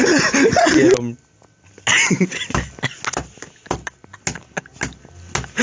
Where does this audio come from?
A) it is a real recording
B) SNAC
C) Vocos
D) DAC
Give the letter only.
A